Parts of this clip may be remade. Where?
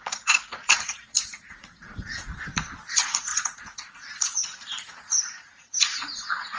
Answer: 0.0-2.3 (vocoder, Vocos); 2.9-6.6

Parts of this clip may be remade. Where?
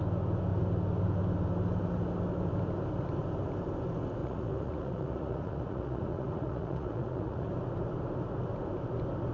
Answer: 4.2-7.5 (vocoder, Vocos)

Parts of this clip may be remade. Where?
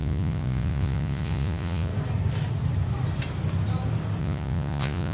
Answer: 0.0-1.9 (vocoder, Vocos); 4.2-5.1